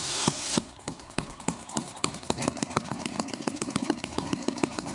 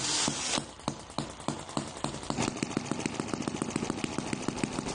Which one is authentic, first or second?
second